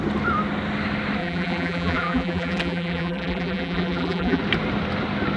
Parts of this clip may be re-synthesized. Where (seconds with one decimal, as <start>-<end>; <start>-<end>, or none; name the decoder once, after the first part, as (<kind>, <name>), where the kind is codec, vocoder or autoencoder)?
1.2-4.4 (vocoder, BigVGAN v2)